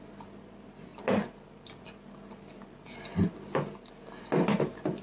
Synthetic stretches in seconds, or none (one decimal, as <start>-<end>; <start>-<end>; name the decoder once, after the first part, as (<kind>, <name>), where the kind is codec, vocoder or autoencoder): none